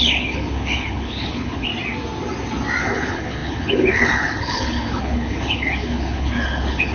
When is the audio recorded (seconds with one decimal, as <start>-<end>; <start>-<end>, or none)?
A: 1.7-2.8